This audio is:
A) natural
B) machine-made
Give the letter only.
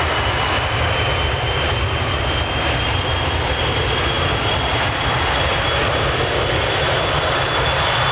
A